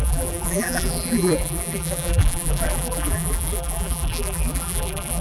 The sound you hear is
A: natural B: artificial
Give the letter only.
B